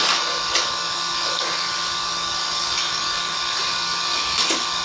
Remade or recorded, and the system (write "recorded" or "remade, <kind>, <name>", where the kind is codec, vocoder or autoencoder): remade, codec, DAC